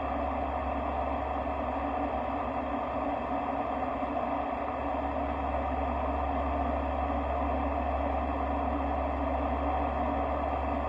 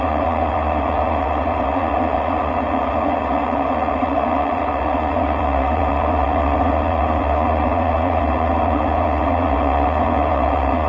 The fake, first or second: second